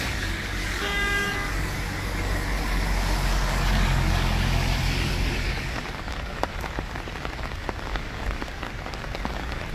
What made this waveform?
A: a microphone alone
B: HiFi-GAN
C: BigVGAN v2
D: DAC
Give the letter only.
D